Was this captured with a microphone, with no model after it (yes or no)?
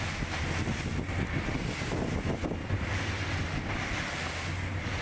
yes